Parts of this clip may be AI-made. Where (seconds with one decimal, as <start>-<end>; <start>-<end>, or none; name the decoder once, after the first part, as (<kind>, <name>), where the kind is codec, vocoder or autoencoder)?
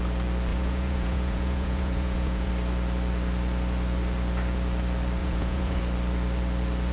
0.5-2.5 (vocoder, Vocos); 5.2-5.8